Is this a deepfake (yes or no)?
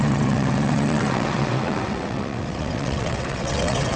yes